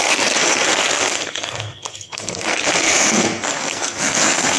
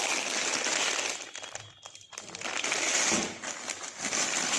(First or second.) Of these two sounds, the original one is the second